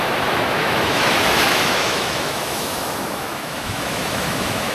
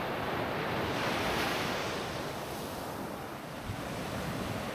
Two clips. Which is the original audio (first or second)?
second